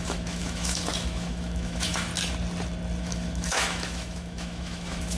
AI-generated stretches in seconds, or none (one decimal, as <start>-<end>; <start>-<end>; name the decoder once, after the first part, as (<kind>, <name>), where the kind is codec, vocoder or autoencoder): 0.0-2.1 (autoencoder, DAC-VAE); 3.0-5.2